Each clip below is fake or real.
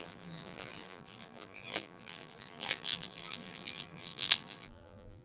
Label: fake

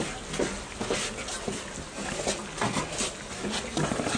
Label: real